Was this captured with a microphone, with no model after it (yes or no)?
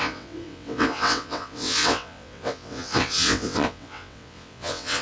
no